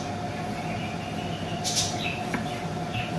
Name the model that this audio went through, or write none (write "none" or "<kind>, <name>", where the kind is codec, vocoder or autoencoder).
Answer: none